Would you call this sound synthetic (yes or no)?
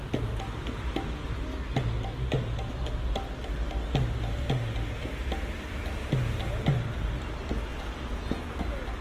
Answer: no